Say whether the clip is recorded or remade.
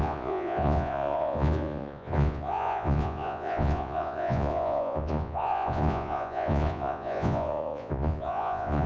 remade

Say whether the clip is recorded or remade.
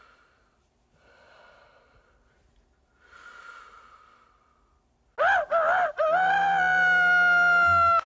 recorded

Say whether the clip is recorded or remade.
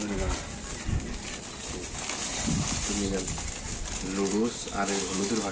recorded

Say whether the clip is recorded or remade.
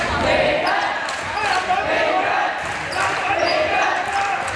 recorded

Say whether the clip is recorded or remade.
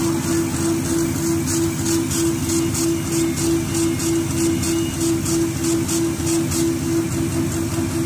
recorded